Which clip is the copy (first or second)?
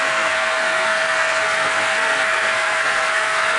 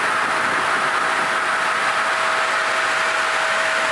first